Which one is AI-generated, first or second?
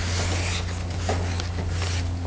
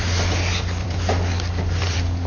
second